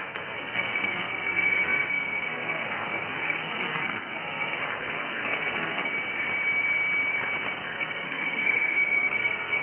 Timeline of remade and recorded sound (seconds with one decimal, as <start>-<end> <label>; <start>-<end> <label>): 0.0-5.9 remade; 5.9-7.6 recorded; 7.6-9.6 remade